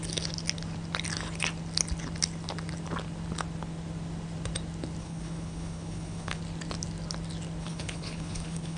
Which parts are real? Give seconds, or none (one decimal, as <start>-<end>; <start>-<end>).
0.0-5.0; 6.4-7.6